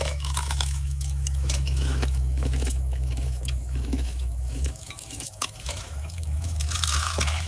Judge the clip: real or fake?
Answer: fake